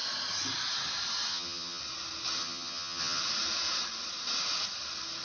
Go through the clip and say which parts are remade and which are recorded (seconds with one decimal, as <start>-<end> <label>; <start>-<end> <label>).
0.0-1.3 recorded; 1.3-1.8 remade; 1.8-2.4 recorded; 2.4-3.2 remade; 3.2-5.2 recorded